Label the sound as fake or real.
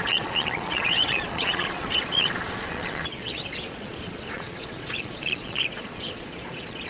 fake